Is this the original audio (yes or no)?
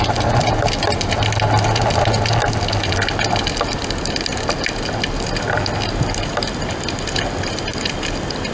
yes